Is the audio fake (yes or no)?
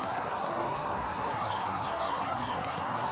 yes